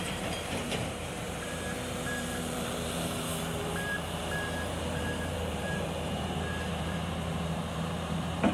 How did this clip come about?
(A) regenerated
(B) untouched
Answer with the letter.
A